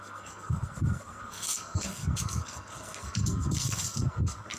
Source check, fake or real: fake